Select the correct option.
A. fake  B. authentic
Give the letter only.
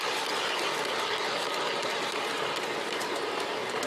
B